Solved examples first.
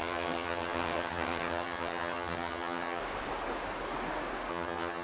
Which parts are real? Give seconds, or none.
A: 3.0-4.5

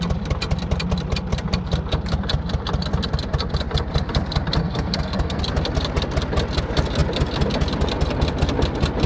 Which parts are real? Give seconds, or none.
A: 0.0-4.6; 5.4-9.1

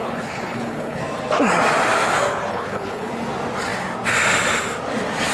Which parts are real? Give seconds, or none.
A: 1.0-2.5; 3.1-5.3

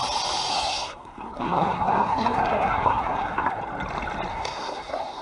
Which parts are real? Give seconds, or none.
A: 0.0-0.5; 3.6-4.3

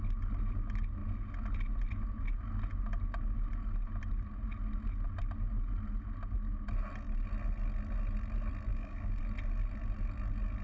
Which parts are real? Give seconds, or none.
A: 0.0-8.7; 9.2-10.6

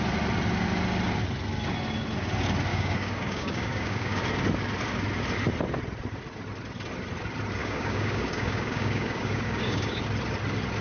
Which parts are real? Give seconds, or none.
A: 0.0-2.7; 4.2-7.6; 10.0-10.8

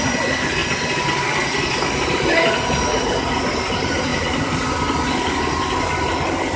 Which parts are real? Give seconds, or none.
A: 0.0-6.6